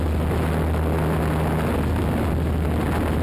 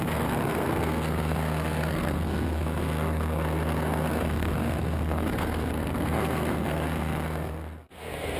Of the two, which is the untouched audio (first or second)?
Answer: first